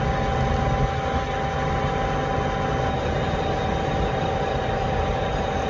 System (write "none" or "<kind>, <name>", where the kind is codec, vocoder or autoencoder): none